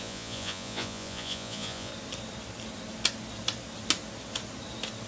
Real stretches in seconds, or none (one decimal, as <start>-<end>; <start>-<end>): 1.9-5.1